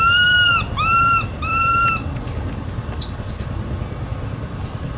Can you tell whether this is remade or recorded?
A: recorded